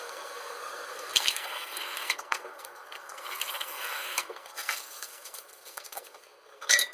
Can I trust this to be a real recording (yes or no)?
no